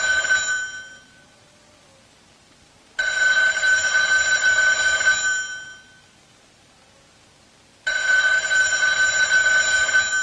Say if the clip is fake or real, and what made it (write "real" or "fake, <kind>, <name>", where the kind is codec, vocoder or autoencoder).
real